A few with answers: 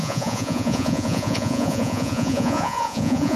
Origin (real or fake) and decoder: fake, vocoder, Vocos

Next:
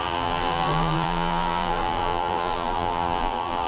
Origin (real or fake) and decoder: fake, vocoder, BigVGAN v2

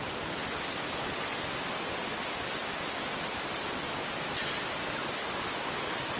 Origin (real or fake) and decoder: real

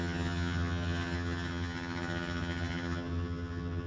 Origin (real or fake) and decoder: fake, vocoder, HiFi-GAN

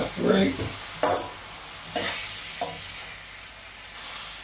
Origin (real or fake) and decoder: real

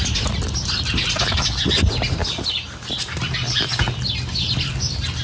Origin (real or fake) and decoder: real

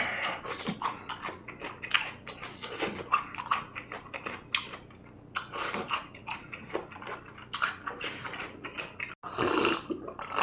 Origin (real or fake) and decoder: real